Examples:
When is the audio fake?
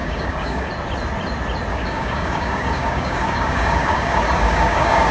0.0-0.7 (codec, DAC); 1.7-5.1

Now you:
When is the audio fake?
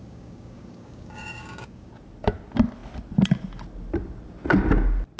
0.0-1.9 (codec, DAC)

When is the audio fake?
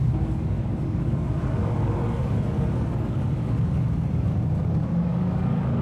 0.0-5.8 (codec, DAC)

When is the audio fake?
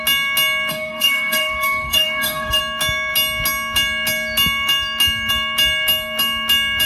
0.7-2.6 (codec, DAC)